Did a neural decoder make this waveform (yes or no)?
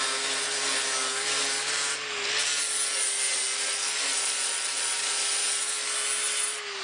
no